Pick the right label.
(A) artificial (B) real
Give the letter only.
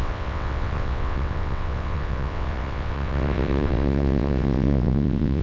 A